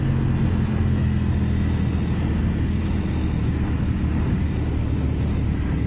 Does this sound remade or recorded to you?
recorded